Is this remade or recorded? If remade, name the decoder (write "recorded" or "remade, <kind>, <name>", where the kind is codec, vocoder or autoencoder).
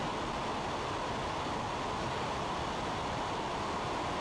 recorded